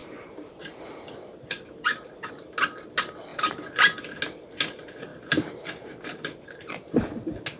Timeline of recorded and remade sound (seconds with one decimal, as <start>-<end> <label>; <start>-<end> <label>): 0.0-2.3 remade; 2.3-3.3 recorded; 3.3-4.2 remade; 4.2-5.1 recorded; 5.1-7.0 remade; 7.0-7.6 recorded